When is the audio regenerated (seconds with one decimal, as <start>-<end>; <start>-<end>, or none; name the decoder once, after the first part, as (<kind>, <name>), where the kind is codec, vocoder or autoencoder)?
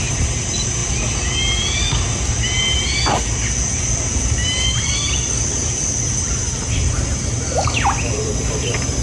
none